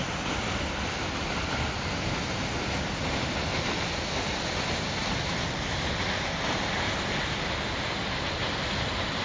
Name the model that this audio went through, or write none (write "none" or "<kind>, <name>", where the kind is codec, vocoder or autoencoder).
none